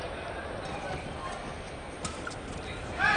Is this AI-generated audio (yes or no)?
no